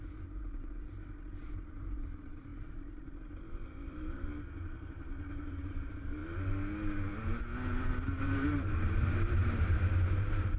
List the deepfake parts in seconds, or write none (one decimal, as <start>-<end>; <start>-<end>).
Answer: 0.0-6.2; 8.2-10.6